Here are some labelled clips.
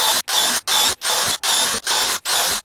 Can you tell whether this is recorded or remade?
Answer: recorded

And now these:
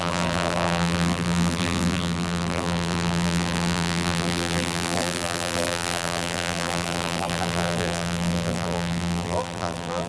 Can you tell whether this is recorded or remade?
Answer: remade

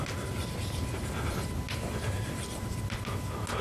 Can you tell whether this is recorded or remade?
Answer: recorded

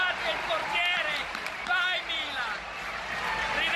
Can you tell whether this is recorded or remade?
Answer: recorded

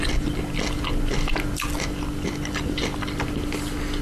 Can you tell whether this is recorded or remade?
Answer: recorded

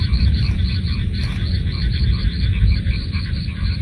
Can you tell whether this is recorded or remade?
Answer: remade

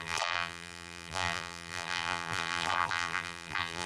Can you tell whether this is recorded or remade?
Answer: remade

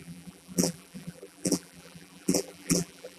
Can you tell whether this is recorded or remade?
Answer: remade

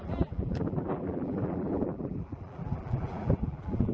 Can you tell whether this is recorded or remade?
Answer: remade